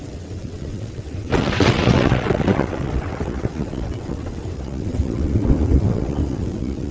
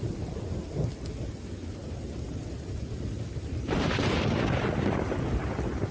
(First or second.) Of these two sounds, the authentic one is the second